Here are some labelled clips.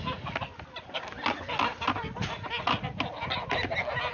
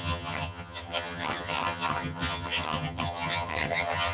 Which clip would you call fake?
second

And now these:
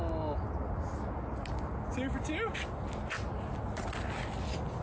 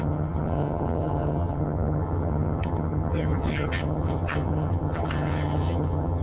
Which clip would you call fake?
second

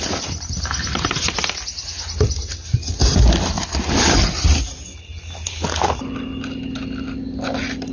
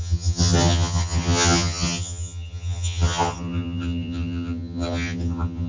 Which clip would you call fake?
second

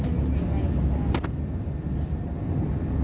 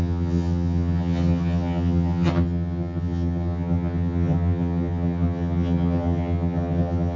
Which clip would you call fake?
second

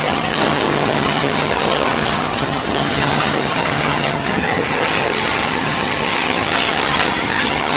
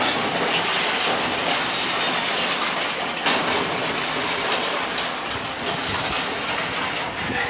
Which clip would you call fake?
first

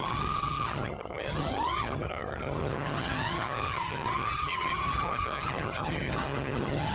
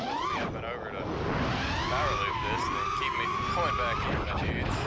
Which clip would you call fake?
first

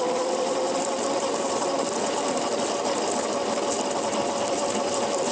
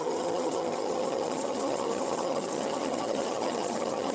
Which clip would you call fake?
second